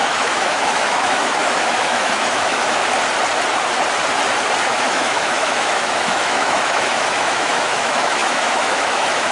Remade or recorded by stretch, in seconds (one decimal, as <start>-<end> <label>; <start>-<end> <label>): 0.0-2.8 remade; 2.8-4.7 recorded; 4.7-9.3 remade